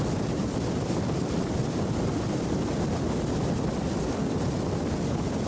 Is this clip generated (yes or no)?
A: yes